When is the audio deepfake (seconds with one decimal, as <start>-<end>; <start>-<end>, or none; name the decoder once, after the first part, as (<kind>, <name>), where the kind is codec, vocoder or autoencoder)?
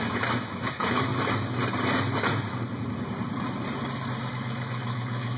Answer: 0.0-1.1 (autoencoder, DAC-VAE); 4.3-5.4